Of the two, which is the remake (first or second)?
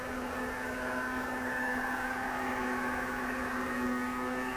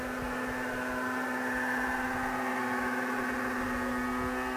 first